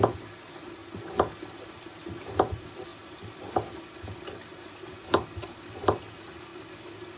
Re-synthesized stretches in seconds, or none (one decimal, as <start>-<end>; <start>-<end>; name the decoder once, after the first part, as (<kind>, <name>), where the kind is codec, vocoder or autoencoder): none